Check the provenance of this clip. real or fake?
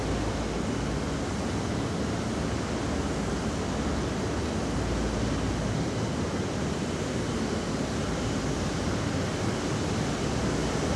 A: real